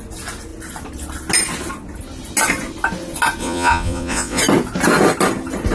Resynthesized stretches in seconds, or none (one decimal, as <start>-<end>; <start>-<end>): 3.4-4.4